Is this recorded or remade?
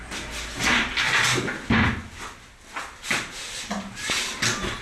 recorded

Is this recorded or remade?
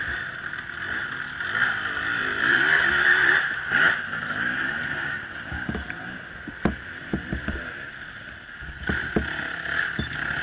recorded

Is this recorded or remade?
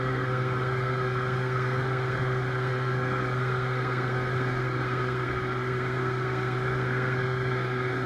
remade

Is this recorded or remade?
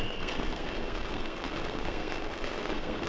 remade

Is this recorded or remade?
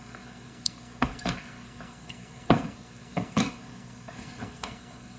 remade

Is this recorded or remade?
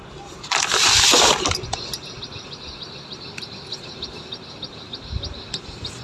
recorded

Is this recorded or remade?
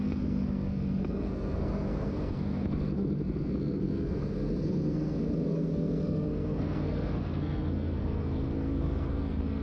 remade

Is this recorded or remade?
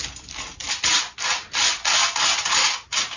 recorded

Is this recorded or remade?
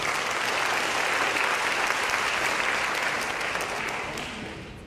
recorded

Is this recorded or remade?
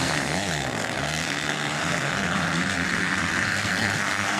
remade